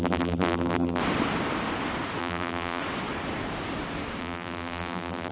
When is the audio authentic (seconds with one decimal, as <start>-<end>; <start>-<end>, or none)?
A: 1.0-2.2; 2.8-4.2